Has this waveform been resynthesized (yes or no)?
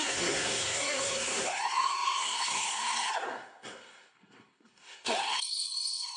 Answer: yes